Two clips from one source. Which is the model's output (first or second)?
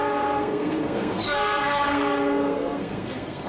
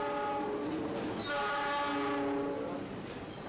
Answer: first